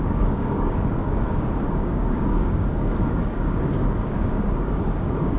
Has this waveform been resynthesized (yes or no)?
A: yes